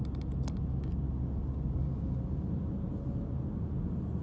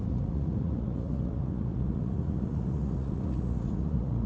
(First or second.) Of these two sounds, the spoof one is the second